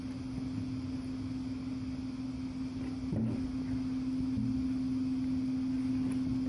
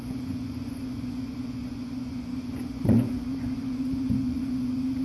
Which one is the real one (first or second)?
first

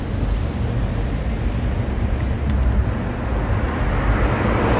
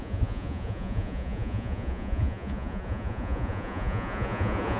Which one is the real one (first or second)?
first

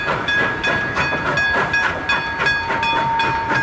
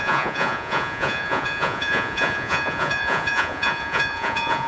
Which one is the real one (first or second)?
first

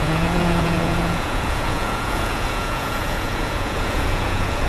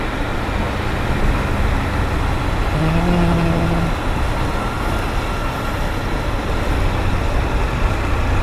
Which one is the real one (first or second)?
second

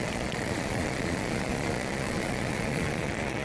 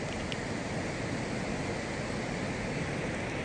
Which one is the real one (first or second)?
second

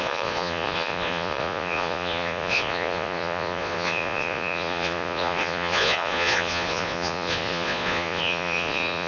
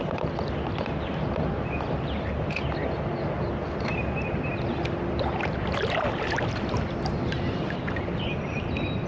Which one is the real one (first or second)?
second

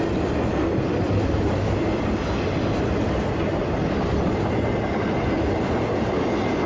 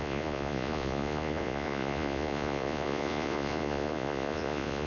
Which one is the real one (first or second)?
first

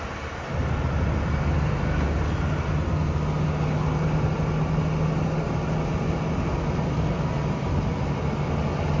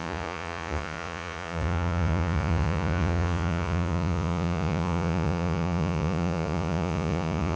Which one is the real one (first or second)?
first